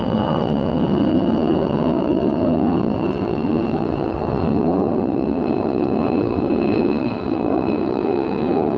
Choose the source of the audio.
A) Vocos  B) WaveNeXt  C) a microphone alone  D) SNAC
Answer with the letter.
B